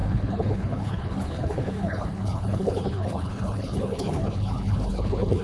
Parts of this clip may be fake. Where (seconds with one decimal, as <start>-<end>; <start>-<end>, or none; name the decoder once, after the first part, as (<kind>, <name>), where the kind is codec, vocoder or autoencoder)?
0.0-5.4 (codec, HILCodec)